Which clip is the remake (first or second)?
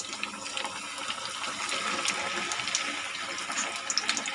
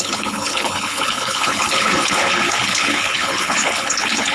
second